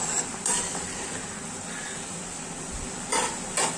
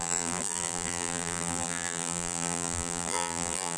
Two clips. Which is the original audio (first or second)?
first